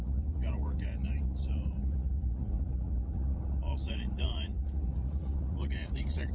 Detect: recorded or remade remade